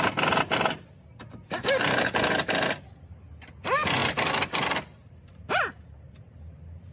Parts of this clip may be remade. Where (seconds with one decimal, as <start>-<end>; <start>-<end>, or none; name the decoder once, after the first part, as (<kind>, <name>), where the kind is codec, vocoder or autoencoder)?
4.0-5.5 (vocoder, BigVGAN v2)